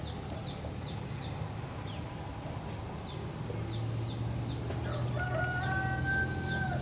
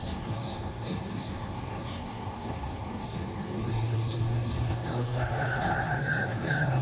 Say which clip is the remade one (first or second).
second